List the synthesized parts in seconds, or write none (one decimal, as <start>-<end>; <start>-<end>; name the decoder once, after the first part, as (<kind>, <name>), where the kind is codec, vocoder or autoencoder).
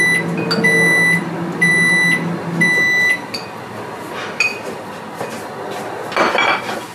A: 4.5-5.3 (vocoder, BigVGAN v2)